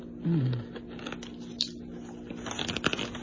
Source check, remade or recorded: recorded